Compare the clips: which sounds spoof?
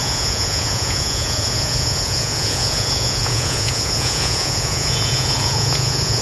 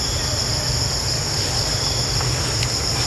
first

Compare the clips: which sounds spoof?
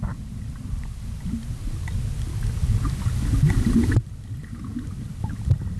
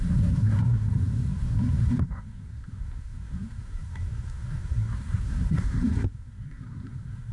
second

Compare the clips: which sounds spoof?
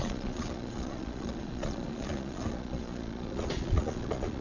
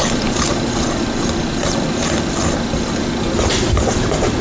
first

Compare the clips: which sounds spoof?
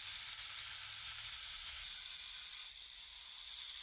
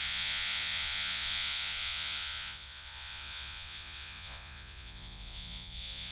second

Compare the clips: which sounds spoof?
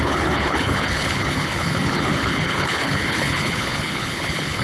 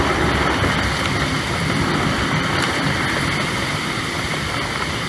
first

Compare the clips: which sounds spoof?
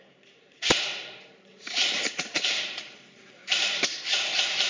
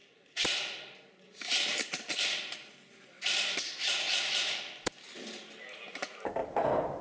first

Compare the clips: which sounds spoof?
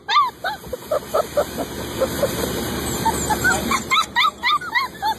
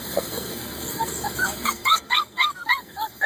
second